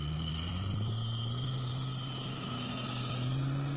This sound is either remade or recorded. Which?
recorded